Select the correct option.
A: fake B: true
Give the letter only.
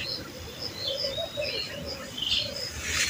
B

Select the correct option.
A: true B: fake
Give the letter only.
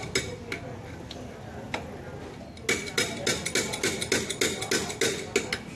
A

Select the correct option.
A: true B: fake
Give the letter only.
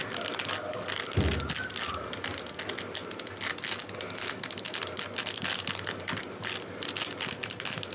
A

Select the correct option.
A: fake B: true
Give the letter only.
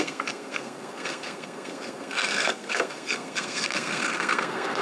A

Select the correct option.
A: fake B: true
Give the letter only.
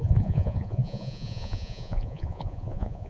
A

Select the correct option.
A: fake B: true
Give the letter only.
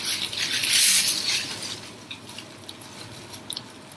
B